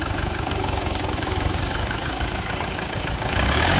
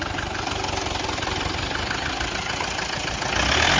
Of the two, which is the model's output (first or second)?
first